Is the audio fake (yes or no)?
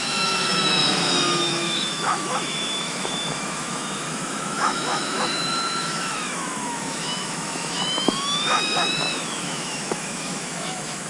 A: yes